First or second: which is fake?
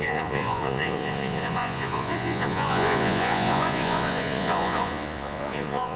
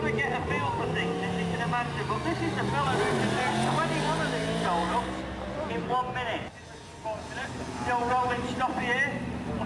first